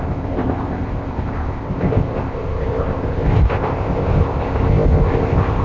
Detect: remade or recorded remade